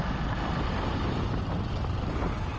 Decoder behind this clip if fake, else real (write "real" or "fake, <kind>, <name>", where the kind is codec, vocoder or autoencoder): real